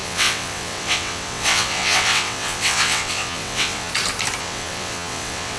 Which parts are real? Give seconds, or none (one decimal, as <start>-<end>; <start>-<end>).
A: 3.9-4.4